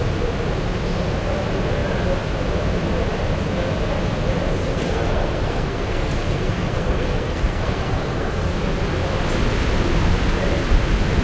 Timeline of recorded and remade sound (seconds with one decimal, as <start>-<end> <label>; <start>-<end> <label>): 0.0-4.6 recorded; 4.6-8.5 remade; 8.5-11.2 recorded